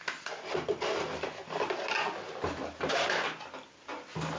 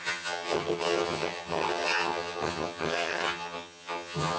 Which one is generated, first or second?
second